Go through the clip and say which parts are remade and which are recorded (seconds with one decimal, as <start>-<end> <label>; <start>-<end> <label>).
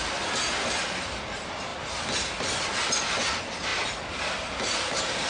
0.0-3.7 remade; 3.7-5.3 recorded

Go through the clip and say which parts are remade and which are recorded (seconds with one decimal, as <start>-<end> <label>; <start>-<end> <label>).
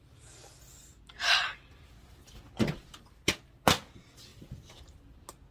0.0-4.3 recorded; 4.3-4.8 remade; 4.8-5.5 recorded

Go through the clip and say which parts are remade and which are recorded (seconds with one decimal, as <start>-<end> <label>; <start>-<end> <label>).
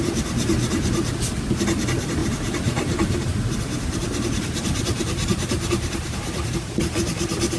0.0-2.2 recorded; 2.2-6.8 remade; 6.8-7.6 recorded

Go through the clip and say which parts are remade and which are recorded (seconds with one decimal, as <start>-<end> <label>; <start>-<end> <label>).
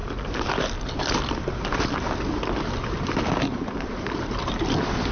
0.0-5.1 recorded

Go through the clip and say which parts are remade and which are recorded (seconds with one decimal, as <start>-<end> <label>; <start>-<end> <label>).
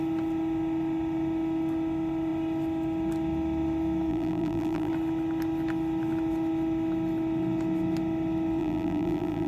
0.0-4.1 recorded; 4.1-4.9 remade; 4.9-8.6 recorded; 8.6-9.5 remade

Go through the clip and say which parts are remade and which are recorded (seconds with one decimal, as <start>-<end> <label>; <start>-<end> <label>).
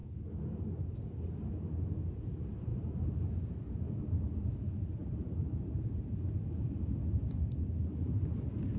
0.0-2.7 recorded; 2.7-3.4 remade; 3.4-5.0 recorded; 5.0-6.4 remade; 6.4-8.8 recorded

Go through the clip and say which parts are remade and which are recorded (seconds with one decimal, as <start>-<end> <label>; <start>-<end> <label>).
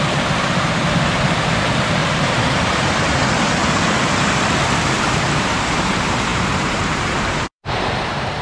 0.0-3.2 remade; 3.2-5.0 recorded; 5.0-8.4 remade